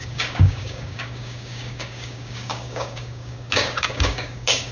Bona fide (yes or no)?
no